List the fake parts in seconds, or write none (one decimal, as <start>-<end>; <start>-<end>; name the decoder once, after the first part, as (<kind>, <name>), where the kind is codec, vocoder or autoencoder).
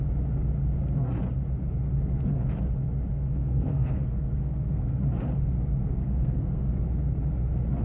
3.1-5.0 (codec, SNAC); 5.8-6.7